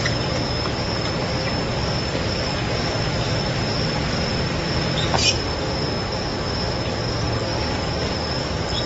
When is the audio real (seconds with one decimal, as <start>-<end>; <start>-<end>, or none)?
0.0-1.8; 5.2-8.9